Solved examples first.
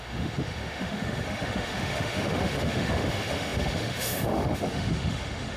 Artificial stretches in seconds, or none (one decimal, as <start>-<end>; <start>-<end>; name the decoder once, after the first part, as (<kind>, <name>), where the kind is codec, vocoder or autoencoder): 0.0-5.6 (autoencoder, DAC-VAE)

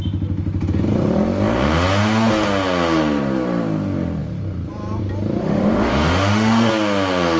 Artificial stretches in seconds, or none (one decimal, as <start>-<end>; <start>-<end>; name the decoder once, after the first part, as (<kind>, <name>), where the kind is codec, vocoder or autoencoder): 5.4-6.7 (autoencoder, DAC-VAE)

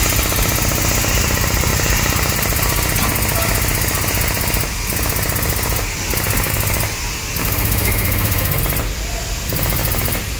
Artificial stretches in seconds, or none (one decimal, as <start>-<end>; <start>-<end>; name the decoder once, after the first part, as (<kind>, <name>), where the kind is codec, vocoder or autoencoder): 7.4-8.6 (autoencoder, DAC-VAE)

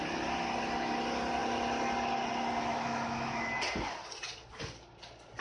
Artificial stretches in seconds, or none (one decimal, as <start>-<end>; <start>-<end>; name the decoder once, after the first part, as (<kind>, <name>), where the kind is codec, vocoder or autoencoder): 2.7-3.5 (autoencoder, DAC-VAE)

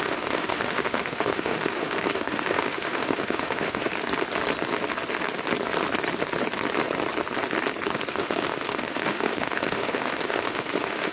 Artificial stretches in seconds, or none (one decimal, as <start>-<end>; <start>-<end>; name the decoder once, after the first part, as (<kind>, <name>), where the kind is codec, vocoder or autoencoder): 0.0-3.9 (autoencoder, DAC-VAE); 8.1-11.1

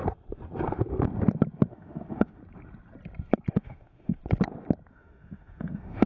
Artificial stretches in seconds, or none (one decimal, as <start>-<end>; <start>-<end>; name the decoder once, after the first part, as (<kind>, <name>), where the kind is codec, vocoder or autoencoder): 1.7-2.4 (autoencoder, DAC-VAE); 3.5-4.2; 4.9-6.1

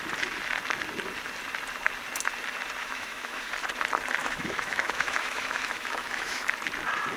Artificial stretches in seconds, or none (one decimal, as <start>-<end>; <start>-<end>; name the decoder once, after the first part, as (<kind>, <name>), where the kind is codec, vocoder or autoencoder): 2.8-3.5 (autoencoder, DAC-VAE); 4.2-6.5

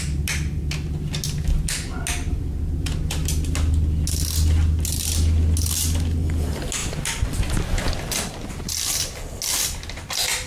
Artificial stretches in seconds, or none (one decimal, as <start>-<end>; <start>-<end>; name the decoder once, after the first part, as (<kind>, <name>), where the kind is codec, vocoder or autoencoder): none